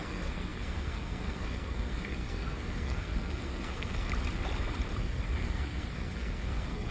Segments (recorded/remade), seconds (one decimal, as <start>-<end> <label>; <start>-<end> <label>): 0.0-4.1 remade; 4.1-5.0 recorded; 5.0-6.9 remade